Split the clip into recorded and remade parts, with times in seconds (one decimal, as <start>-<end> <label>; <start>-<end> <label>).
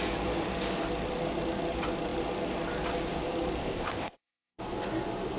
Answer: 0.0-3.6 recorded; 3.6-4.6 remade; 4.6-5.4 recorded